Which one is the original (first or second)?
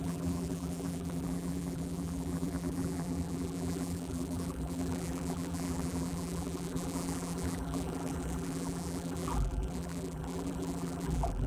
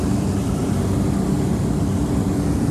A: second